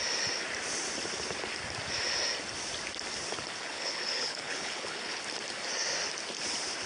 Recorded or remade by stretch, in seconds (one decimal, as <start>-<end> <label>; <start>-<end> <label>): 0.0-3.6 recorded; 3.6-5.2 remade; 5.2-6.9 recorded